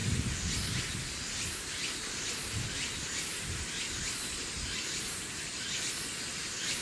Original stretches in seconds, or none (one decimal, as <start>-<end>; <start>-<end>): 0.0-6.8